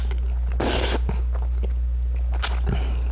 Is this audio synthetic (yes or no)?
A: no